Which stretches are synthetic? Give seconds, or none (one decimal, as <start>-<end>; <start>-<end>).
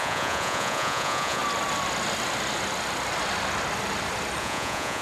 0.0-1.4; 4.4-5.0